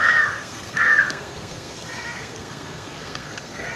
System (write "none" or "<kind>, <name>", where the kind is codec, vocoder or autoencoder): codec, SNAC